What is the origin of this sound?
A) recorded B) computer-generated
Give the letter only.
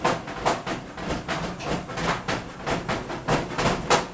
A